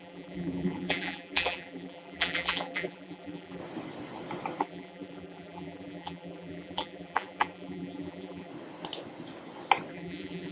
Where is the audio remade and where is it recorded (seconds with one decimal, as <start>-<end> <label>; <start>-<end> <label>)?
0.0-3.6 remade; 3.6-4.6 recorded; 4.6-8.5 remade; 8.5-9.9 recorded; 9.9-10.5 remade